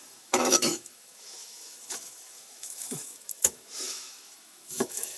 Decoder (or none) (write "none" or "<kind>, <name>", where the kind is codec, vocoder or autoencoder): autoencoder, DAC-VAE